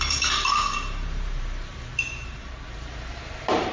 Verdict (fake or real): fake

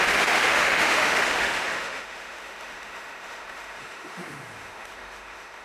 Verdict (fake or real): fake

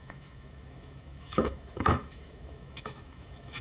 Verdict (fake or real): fake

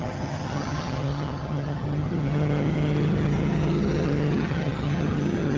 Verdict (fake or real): fake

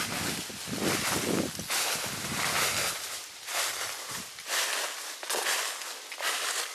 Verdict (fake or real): real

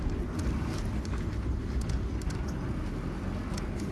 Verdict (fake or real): real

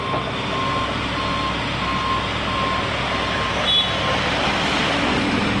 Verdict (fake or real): real